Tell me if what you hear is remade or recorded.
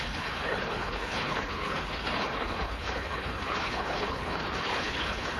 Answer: remade